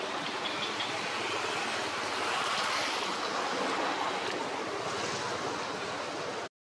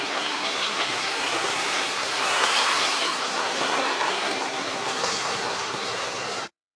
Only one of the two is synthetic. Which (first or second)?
second